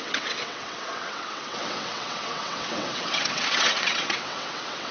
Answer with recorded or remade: remade